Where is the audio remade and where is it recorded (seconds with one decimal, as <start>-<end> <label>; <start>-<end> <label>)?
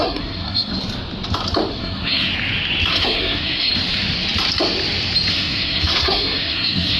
0.0-0.7 remade; 0.7-1.7 recorded; 1.7-2.3 remade; 2.3-2.9 recorded; 2.9-3.7 remade; 3.7-5.3 recorded; 5.3-7.0 remade